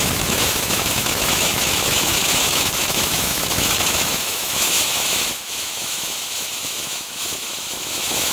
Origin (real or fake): fake